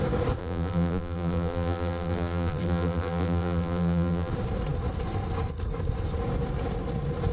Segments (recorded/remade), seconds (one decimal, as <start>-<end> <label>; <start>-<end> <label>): 0.0-0.4 recorded; 0.4-4.3 remade; 4.3-7.3 recorded